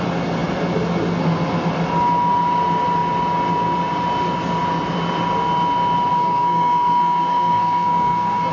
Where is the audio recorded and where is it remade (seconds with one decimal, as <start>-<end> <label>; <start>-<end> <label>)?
0.0-6.1 recorded; 6.1-8.5 remade